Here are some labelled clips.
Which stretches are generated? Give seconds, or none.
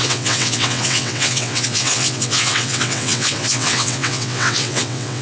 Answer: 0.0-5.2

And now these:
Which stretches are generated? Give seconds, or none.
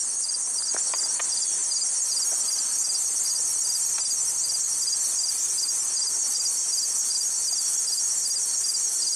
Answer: none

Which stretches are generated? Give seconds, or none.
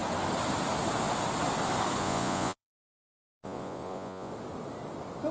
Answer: 2.0-4.3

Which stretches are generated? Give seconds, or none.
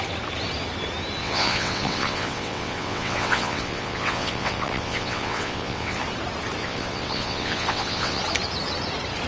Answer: 1.2-6.0; 6.6-8.2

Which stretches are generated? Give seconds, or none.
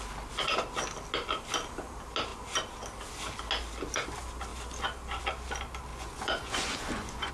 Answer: 5.9-7.3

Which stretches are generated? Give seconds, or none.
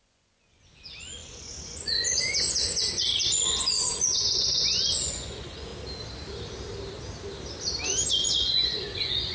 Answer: 0.0-5.7; 8.1-9.3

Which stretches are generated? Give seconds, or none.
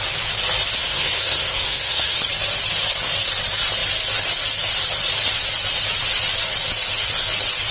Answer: 0.8-2.2